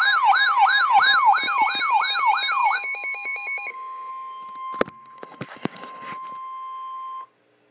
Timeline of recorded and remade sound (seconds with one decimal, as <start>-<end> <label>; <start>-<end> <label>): 0.0-2.6 recorded; 2.6-4.1 remade; 4.1-5.0 recorded; 5.0-6.1 remade; 6.1-7.7 recorded